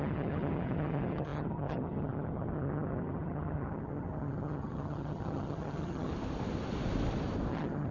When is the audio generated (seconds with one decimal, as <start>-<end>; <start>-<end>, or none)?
0.0-6.1; 7.5-7.9